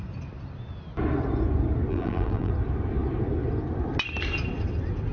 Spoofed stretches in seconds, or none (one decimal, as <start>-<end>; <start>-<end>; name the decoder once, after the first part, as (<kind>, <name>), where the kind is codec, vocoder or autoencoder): 1.9-2.5 (vocoder, BigVGAN v2)